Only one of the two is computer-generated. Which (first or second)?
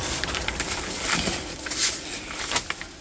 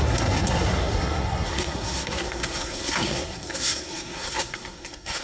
second